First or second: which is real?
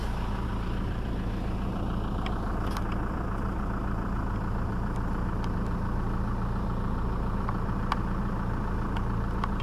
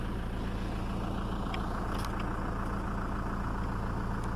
second